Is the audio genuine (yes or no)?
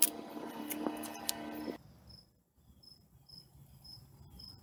no